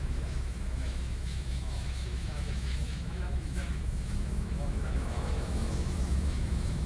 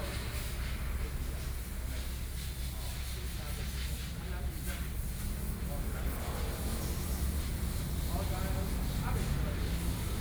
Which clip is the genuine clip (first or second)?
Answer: second